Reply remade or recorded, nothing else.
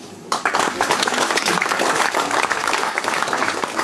remade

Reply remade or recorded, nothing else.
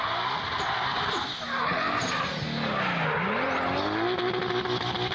recorded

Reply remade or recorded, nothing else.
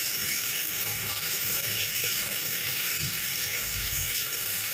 remade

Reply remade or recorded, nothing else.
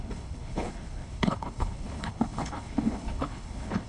remade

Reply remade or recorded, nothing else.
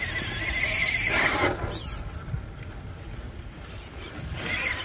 recorded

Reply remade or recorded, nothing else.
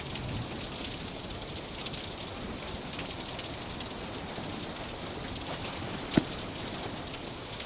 recorded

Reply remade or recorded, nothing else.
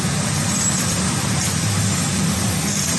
remade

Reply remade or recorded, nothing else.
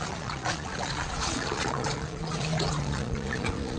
remade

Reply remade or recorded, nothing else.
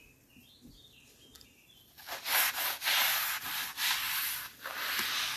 recorded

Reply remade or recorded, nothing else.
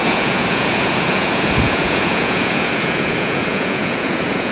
remade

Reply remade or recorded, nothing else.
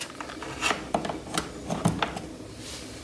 recorded